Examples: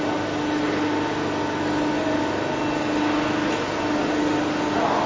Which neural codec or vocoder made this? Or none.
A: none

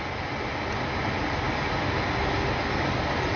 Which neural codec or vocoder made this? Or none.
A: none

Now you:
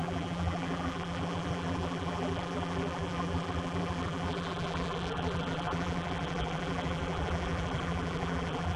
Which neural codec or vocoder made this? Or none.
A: vocoder, BigVGAN v2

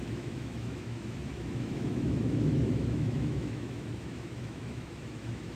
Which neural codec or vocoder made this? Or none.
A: autoencoder, DAC-VAE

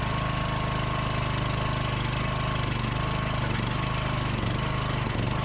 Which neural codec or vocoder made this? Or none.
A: none